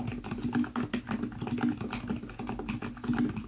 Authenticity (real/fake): real